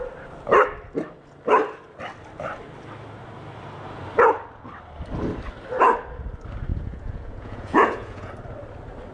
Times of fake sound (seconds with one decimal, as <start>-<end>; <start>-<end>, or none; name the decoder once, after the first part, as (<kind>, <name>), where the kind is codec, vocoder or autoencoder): 6.7-8.3 (vocoder, Vocos)